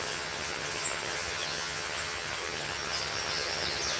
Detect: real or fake fake